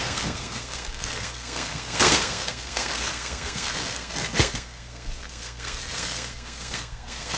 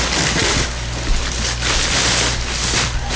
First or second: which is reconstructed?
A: first